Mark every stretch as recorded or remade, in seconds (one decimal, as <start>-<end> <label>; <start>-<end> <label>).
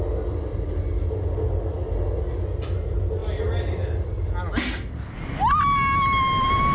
0.0-6.7 recorded